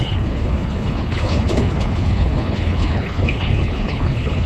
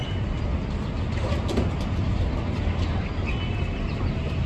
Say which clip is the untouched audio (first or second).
second